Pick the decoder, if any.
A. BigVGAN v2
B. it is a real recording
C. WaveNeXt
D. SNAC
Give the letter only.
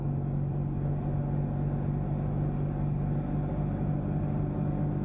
B